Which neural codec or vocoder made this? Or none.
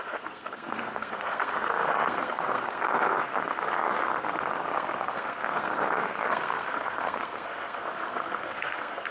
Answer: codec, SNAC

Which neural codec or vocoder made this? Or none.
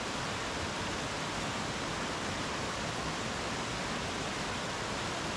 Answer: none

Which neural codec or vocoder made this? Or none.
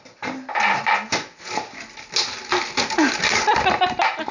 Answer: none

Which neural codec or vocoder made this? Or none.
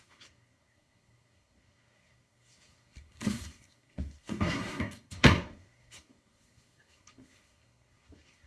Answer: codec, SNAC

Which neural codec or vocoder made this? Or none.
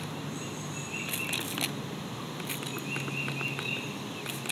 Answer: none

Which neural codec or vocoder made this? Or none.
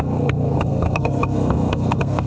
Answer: codec, SNAC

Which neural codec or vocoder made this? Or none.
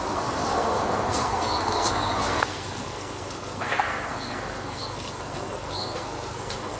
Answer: codec, SNAC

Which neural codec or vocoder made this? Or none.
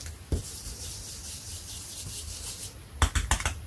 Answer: none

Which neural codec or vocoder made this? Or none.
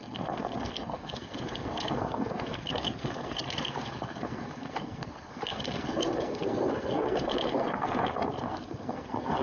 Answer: codec, SNAC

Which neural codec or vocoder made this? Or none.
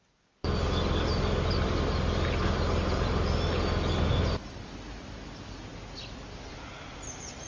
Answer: none